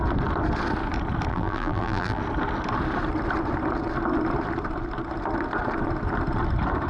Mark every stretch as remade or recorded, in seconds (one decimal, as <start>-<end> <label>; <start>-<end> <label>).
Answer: 0.0-1.3 recorded; 1.3-2.2 remade; 2.2-6.9 recorded